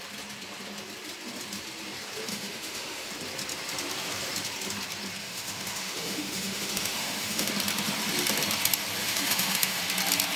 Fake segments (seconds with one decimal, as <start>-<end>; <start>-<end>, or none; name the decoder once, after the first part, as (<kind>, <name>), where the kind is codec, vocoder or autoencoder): 2.3-3.1 (autoencoder, DAC-VAE); 5.2-7.5; 9.0-9.8

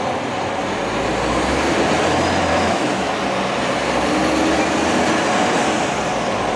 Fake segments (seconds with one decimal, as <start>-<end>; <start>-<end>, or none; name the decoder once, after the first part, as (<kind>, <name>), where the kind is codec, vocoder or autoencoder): 2.5-3.1 (autoencoder, DAC-VAE)

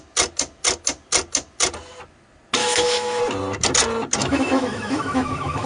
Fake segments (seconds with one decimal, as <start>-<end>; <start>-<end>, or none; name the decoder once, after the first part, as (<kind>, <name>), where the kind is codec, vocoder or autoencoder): 2.6-3.2 (autoencoder, DAC-VAE); 4.2-5.7

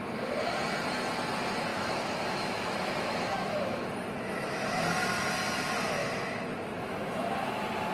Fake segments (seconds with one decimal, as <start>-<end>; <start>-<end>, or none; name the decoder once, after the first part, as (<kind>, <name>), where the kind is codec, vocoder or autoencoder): 1.7-4.8 (autoencoder, DAC-VAE); 6.0-7.3

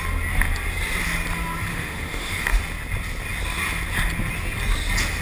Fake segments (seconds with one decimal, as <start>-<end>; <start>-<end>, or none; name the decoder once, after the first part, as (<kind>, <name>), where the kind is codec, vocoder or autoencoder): 1.7-2.6 (autoencoder, DAC-VAE)

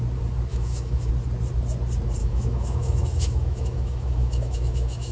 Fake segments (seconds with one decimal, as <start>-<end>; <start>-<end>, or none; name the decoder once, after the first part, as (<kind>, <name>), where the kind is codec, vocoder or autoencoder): 0.5-1.1 (autoencoder, DAC-VAE); 2.2-5.1

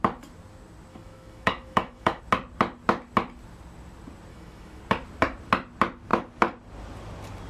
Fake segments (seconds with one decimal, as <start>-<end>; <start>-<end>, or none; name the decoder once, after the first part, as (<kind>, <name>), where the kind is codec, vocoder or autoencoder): 0.9-2.2 (autoencoder, DAC-VAE); 4.3-4.8